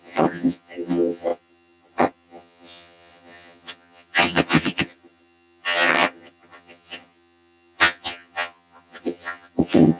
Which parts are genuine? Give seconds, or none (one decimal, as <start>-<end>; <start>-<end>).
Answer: none